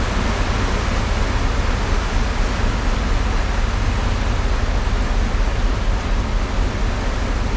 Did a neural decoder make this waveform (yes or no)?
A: no